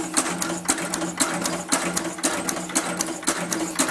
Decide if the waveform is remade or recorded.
recorded